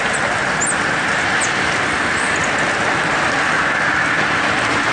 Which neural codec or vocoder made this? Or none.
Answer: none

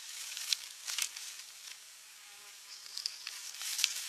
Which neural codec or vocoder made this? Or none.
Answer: codec, DAC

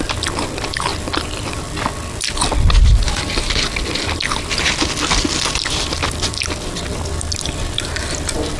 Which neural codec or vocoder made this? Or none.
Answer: none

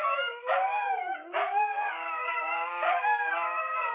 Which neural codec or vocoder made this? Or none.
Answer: codec, DAC